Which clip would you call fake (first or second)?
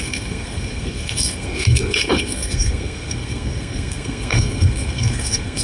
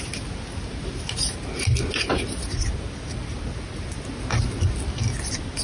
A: first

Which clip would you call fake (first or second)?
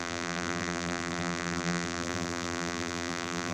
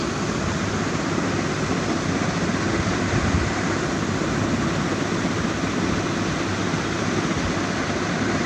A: first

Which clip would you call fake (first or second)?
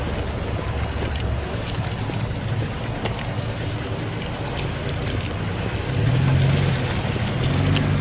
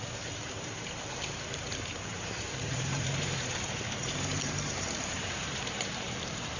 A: second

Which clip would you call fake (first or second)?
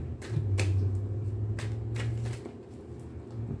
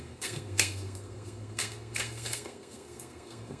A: second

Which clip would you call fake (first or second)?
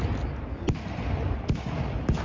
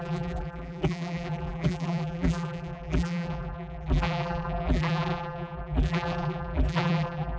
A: second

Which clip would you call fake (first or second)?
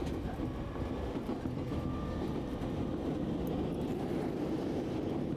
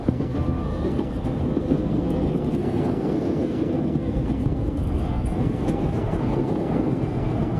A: second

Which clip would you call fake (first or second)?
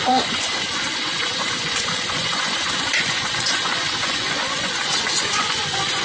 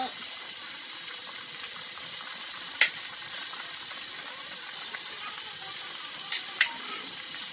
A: first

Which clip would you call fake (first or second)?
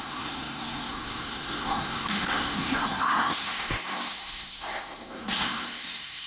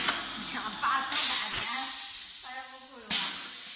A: first